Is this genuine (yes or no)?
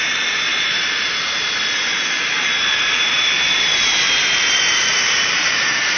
no